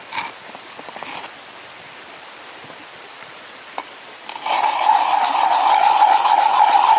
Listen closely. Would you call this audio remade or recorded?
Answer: recorded